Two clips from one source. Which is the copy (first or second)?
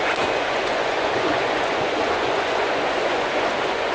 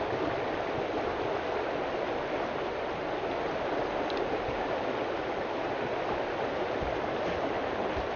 first